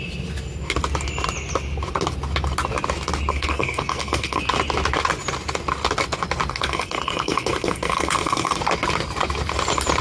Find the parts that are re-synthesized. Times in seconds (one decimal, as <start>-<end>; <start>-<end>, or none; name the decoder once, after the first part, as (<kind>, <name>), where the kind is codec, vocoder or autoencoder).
3.3-4.4 (codec, SNAC); 6.5-8.6